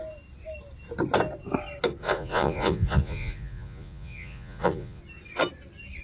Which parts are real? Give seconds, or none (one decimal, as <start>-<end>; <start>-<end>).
0.0-2.0; 5.0-6.0